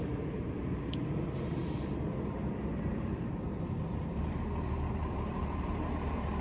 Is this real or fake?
fake